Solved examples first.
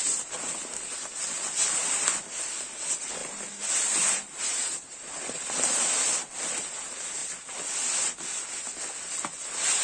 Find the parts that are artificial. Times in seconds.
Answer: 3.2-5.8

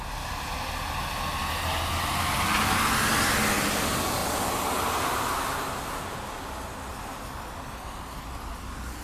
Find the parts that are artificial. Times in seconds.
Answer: none

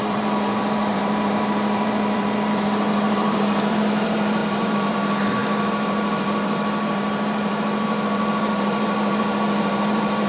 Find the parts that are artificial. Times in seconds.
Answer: 0.0-10.3